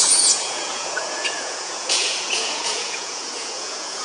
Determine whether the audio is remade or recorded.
remade